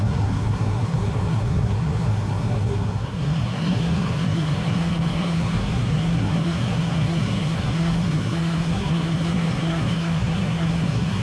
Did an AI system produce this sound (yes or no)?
yes